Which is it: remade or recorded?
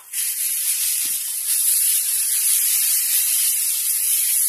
remade